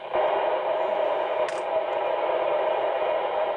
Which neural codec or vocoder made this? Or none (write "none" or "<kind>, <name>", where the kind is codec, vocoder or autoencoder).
none